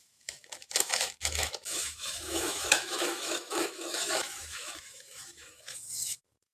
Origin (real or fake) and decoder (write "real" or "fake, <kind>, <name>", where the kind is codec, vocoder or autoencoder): fake, autoencoder, DAC-VAE